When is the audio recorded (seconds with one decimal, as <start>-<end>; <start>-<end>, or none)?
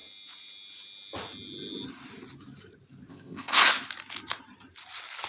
0.0-3.1; 3.6-5.3